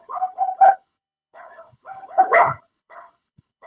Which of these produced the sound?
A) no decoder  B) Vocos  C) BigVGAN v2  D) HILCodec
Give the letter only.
D